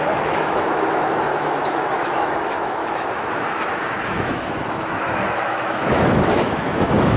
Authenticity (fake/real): fake